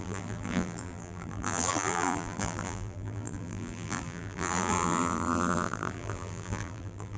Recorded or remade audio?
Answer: remade